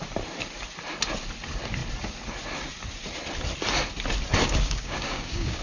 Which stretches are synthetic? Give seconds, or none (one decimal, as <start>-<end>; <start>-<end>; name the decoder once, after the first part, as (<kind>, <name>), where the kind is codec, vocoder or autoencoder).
4.4-5.6 (codec, DAC)